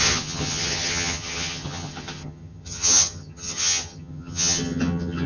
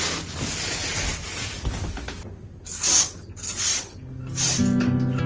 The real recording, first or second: second